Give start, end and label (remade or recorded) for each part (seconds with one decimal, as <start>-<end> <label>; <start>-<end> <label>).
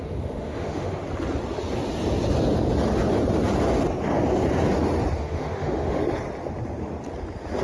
0.0-1.0 remade; 1.0-5.2 recorded; 5.2-6.0 remade; 6.0-7.6 recorded